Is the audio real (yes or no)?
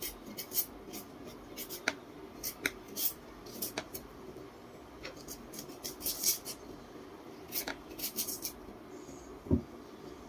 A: yes